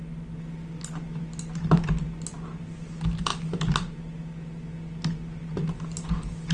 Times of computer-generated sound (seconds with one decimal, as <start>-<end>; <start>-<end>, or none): none